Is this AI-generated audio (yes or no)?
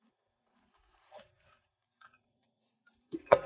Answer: yes